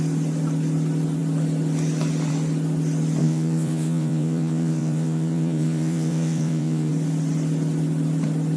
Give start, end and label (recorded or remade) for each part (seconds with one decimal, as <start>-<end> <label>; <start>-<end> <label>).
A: 0.0-3.2 recorded; 3.2-6.9 remade; 6.9-8.6 recorded